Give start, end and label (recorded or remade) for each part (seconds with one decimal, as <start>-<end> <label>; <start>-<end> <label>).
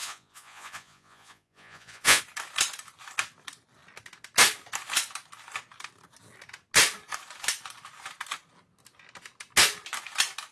0.0-2.2 remade; 2.2-10.5 recorded